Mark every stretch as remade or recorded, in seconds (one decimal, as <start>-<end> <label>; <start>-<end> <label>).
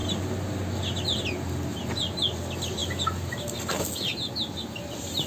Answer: 0.0-5.3 recorded